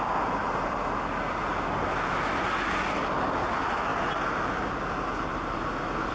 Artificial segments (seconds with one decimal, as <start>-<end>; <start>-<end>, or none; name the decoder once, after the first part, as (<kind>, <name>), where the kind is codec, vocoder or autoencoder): 0.4-2.4 (vocoder, BigVGAN v2); 5.3-6.1